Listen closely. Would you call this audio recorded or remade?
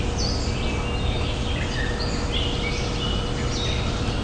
recorded